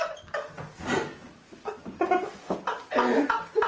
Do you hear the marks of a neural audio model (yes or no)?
no